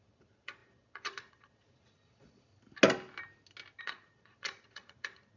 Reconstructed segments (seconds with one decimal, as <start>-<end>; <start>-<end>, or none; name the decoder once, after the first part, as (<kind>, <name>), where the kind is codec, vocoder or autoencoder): 0.0-2.5 (vocoder, Vocos); 3.8-5.4